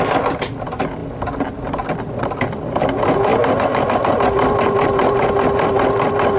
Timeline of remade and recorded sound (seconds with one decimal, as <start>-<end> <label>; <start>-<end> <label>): 0.0-6.4 recorded

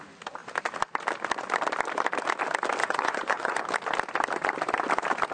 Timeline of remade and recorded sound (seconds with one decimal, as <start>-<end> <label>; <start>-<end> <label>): 0.0-2.8 recorded; 2.8-3.6 remade; 3.6-5.3 recorded

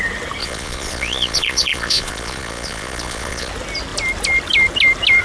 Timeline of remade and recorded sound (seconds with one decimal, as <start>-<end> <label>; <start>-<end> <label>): 0.0-0.4 recorded; 0.4-3.5 remade; 3.5-5.2 recorded

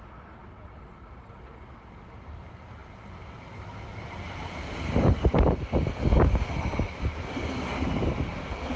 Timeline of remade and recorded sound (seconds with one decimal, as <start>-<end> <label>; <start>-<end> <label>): 0.0-8.8 recorded

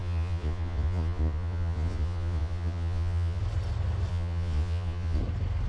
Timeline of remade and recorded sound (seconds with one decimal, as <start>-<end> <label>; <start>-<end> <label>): 0.0-3.4 remade; 3.4-4.1 recorded; 4.1-5.2 remade; 5.2-5.7 recorded